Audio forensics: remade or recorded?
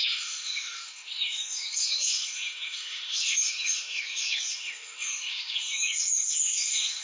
remade